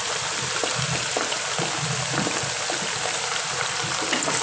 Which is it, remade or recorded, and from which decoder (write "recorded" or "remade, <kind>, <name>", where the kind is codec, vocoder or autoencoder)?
recorded